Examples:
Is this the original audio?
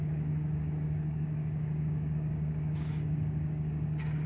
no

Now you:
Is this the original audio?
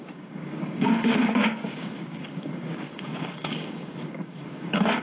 no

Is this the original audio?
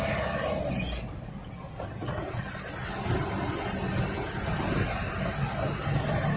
yes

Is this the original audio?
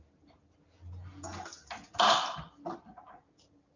yes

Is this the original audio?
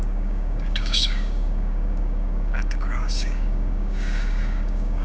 no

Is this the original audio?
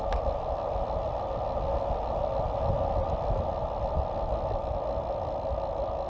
yes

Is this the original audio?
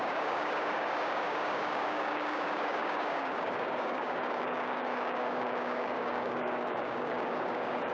no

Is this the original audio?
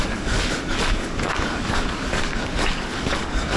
no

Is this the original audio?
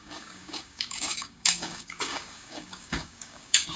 no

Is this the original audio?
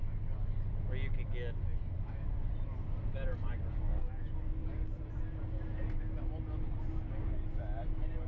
yes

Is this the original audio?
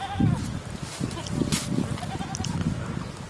yes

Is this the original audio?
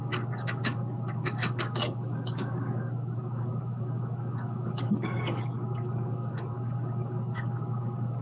no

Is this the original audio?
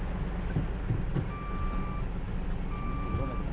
yes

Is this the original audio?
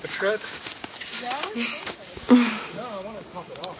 no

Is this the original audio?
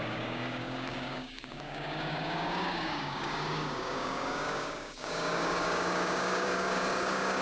no